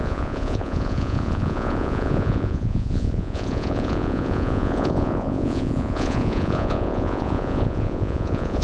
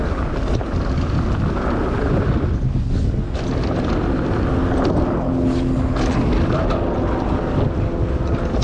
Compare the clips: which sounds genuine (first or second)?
second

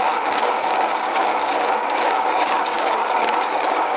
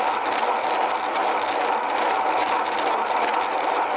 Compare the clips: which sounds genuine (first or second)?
second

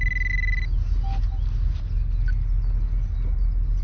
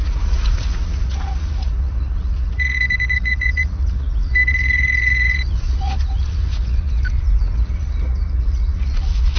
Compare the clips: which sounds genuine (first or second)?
first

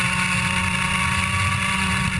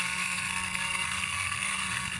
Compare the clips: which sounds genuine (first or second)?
first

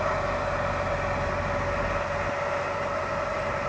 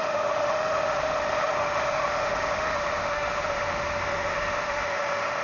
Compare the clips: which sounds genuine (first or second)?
first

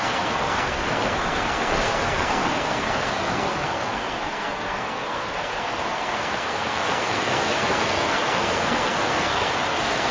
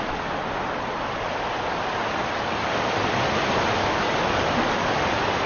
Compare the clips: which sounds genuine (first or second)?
second